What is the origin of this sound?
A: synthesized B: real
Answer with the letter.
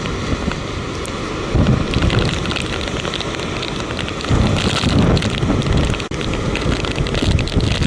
B